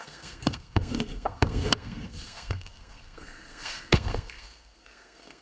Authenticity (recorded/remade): remade